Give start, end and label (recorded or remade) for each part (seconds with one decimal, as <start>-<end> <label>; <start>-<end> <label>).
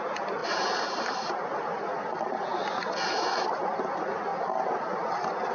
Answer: 0.0-0.4 recorded; 0.4-1.9 remade; 1.9-4.3 recorded; 4.3-5.5 remade